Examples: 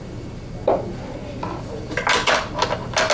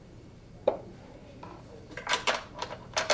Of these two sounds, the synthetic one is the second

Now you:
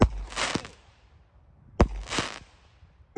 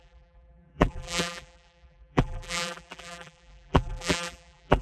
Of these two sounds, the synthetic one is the second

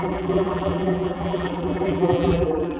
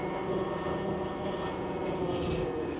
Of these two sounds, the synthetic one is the first